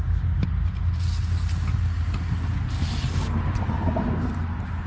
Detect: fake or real real